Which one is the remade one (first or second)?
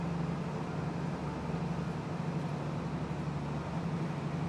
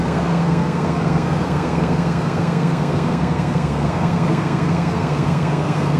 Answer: second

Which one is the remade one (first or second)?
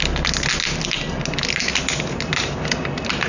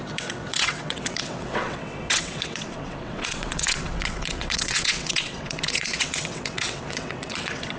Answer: second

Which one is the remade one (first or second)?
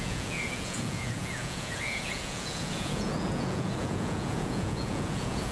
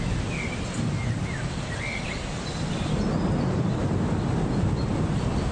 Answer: first